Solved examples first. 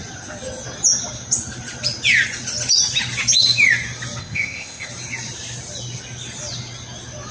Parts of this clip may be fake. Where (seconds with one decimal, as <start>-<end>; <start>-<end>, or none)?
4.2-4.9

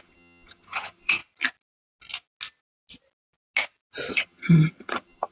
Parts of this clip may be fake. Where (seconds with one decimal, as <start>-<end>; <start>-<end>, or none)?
0.0-1.2; 4.1-5.3

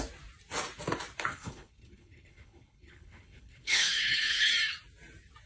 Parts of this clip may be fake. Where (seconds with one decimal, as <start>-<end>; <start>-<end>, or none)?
1.3-4.5

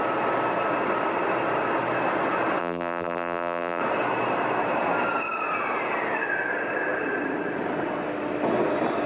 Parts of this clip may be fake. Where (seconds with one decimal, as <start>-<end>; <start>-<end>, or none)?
2.6-3.8

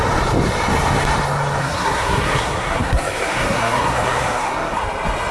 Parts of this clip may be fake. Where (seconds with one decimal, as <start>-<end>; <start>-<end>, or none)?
1.6-4.8

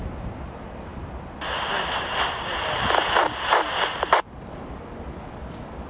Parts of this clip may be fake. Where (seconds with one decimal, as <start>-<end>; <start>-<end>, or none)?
none